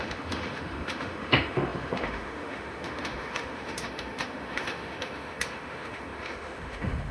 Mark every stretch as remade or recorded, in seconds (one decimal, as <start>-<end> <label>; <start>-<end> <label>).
0.0-7.1 remade